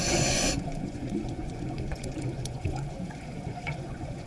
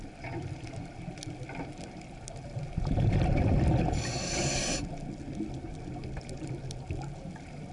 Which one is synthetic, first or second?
first